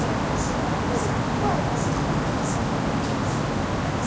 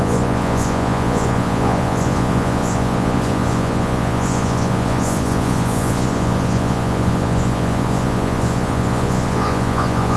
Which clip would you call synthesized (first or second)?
second